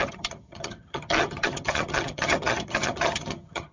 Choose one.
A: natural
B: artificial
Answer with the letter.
B